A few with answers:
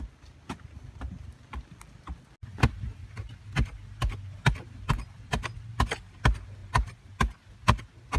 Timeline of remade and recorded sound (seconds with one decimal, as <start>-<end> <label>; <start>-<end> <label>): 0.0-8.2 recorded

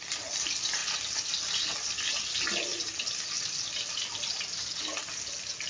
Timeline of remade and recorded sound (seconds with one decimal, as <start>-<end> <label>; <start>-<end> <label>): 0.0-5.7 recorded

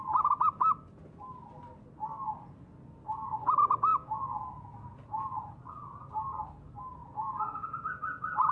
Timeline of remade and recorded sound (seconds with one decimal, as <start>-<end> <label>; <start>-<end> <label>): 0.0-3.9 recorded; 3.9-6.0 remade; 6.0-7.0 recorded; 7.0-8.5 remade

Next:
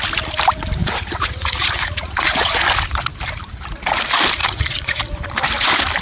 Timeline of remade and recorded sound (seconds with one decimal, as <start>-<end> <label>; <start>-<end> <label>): 0.0-0.8 recorded; 0.8-2.6 remade; 2.6-4.4 recorded; 4.4-5.0 remade; 5.0-6.0 recorded

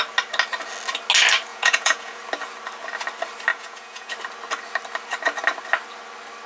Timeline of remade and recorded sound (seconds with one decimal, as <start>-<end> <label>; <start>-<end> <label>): 0.0-1.5 recorded; 1.5-2.2 remade; 2.2-3.5 recorded; 3.5-4.1 remade; 4.1-6.5 recorded

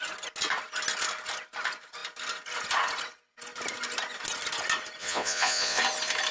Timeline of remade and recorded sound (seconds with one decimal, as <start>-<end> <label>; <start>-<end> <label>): 0.0-5.0 recorded; 5.0-5.8 remade; 5.8-6.3 recorded